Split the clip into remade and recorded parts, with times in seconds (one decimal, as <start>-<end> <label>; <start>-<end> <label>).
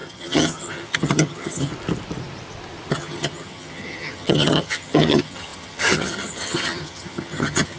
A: 0.0-1.7 remade; 1.7-2.9 recorded; 2.9-7.8 remade